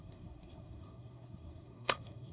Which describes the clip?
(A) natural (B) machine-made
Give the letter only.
B